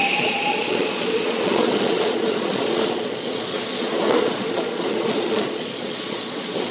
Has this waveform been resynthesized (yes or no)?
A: yes